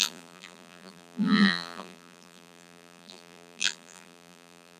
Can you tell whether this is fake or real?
fake